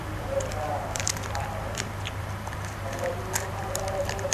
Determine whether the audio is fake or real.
fake